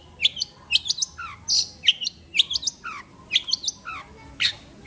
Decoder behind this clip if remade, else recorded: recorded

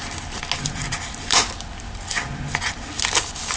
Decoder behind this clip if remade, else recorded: recorded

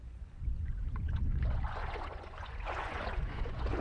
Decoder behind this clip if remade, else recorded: remade, vocoder, Vocos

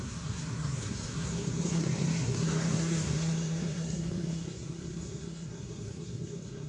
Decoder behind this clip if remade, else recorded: remade, codec, SNAC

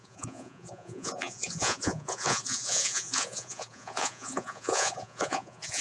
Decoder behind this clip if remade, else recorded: remade, vocoder, Vocos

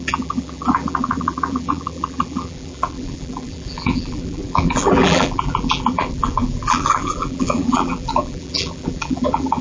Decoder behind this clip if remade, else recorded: remade, vocoder, BigVGAN v2